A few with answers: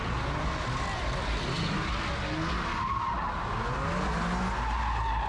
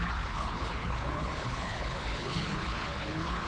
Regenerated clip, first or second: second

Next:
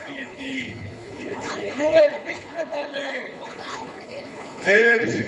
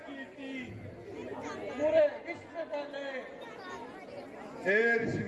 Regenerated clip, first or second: first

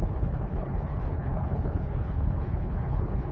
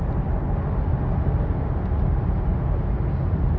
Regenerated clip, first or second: first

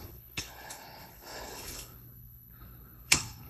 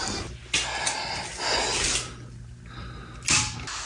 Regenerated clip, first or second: first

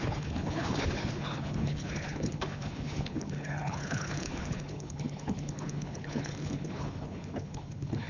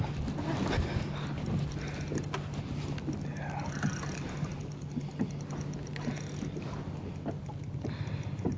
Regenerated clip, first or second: first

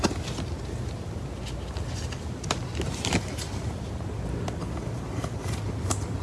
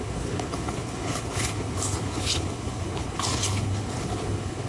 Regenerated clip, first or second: second